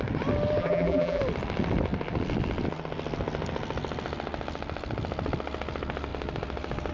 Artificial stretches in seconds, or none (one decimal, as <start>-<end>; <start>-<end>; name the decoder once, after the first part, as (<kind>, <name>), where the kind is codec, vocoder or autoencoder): 0.6-1.2 (vocoder, BigVGAN v2)

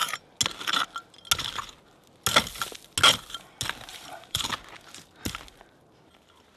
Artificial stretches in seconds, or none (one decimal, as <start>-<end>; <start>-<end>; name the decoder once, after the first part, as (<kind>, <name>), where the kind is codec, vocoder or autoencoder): 3.9-4.5 (vocoder, BigVGAN v2)

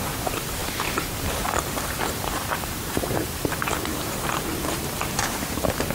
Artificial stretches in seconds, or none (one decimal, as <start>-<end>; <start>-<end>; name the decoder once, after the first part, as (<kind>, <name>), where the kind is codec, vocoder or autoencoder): 0.0-5.9 (vocoder, BigVGAN v2)